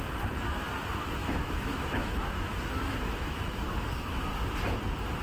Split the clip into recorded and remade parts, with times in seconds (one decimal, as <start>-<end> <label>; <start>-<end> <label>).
0.0-1.2 recorded; 1.2-4.3 remade; 4.3-5.2 recorded